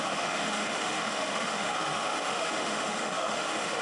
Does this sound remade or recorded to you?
remade